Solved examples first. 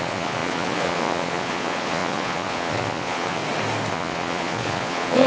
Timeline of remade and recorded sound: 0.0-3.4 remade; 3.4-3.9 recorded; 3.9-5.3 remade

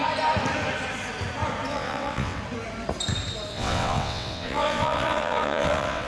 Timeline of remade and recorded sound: 0.0-1.7 recorded; 1.7-2.4 remade; 2.4-3.5 recorded; 3.5-6.1 remade

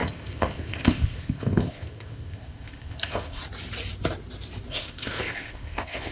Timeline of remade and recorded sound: 0.0-3.4 remade; 3.4-4.7 recorded; 4.7-6.1 remade

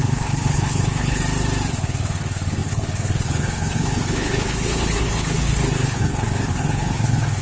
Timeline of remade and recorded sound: 0.0-1.2 remade; 1.2-1.7 recorded; 1.7-7.4 remade